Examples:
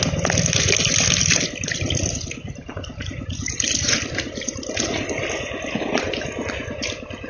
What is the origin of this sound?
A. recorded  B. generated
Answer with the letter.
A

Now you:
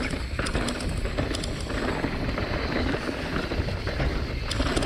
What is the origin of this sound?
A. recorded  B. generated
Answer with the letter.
A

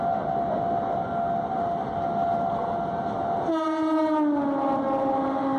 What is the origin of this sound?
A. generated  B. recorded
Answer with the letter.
B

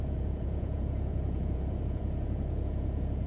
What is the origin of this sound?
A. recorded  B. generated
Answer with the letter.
B